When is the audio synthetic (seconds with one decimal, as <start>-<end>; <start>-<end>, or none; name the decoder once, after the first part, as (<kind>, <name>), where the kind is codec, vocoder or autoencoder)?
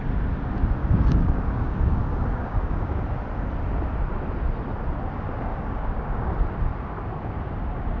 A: 0.8-2.0 (codec, DAC); 2.4-3.0; 5.5-6.3